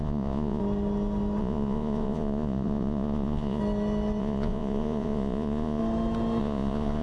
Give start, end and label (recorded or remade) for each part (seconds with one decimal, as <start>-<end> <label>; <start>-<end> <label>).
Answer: 0.0-0.6 remade; 0.6-1.4 recorded; 1.4-3.6 remade; 3.6-4.2 recorded; 4.2-5.8 remade; 5.8-6.4 recorded; 6.4-7.0 remade